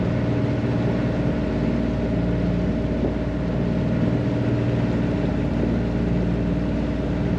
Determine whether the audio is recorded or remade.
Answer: recorded